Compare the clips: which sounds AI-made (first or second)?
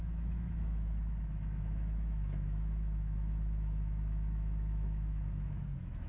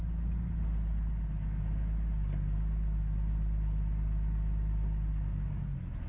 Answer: first